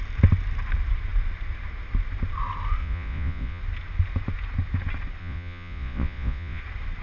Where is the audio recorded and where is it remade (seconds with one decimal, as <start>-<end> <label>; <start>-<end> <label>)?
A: 0.0-2.8 recorded; 2.8-3.6 remade; 3.6-5.2 recorded; 5.2-6.6 remade; 6.6-7.0 recorded